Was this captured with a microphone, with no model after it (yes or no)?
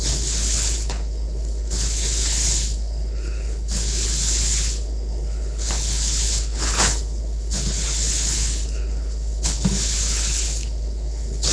no